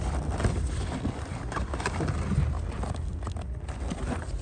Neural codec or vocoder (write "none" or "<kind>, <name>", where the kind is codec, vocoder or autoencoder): none